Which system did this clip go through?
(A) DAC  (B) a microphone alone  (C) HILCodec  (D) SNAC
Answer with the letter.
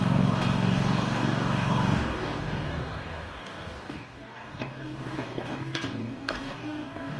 A